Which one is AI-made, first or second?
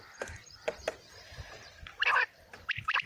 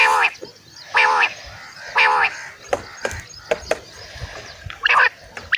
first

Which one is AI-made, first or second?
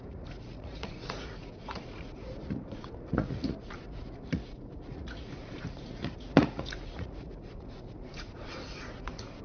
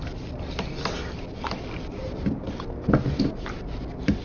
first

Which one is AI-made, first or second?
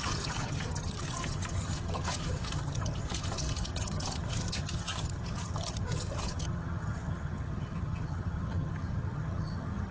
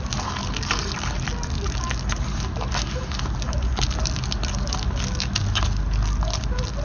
first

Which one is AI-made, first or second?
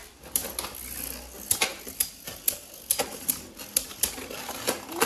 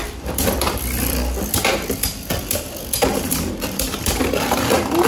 second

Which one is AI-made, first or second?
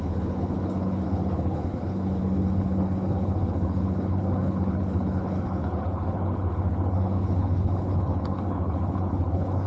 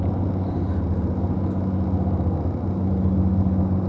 first